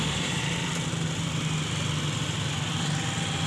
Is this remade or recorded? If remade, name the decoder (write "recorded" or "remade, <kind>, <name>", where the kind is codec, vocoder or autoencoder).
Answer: recorded